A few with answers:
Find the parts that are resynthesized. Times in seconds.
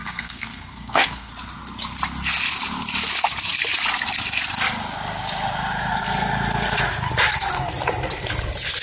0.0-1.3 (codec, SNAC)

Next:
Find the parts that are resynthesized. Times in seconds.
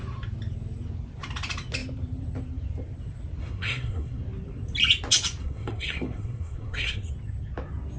3.4-4.2 (codec, SNAC); 5.4-7.1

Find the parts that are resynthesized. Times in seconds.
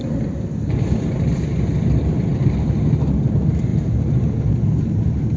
2.3-3.2 (vocoder, BigVGAN v2); 3.7-5.4